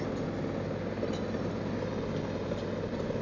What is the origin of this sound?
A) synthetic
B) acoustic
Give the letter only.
B